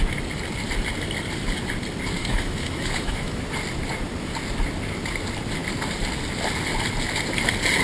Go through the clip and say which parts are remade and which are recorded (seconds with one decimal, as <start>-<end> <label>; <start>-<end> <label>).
0.0-2.2 recorded; 2.2-3.4 remade; 3.4-7.8 recorded